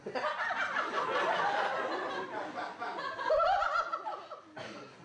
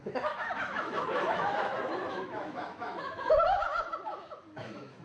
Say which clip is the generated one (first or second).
second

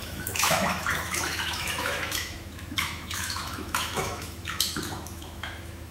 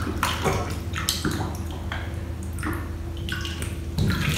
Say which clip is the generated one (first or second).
first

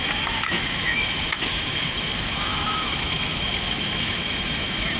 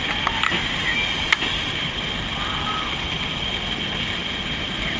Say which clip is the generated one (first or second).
first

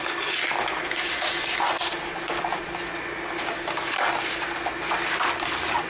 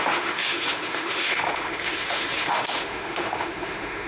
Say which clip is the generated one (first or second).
second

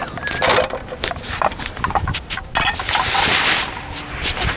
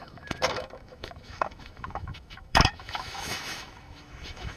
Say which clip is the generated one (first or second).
second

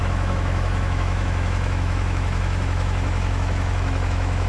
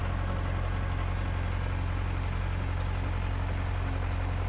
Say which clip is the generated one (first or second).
first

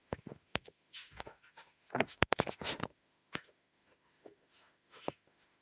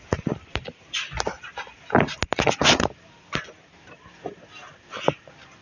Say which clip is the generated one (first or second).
first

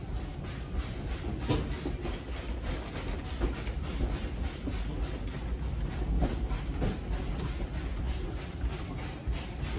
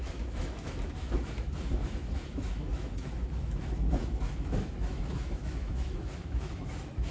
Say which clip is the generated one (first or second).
second